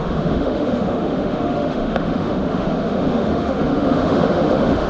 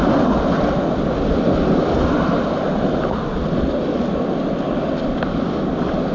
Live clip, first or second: second